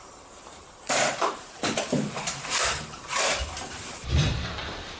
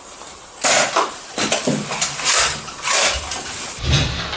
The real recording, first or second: second